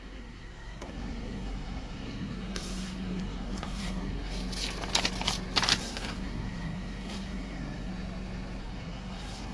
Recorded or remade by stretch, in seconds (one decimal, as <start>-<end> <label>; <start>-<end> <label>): 0.0-4.4 remade; 4.4-5.8 recorded; 5.8-7.9 remade; 7.9-8.6 recorded; 8.6-9.5 remade